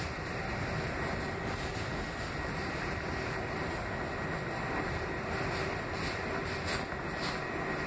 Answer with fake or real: real